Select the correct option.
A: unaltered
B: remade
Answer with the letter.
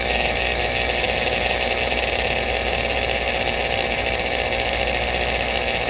B